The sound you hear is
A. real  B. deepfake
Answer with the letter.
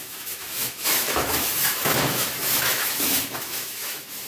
B